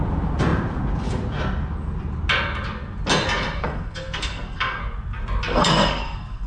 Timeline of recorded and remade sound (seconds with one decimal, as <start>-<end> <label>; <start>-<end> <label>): 0.0-3.6 recorded; 3.6-4.8 remade; 4.8-5.5 recorded; 5.5-6.5 remade